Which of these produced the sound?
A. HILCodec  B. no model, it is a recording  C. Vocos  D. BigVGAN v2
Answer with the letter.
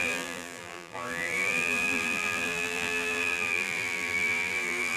D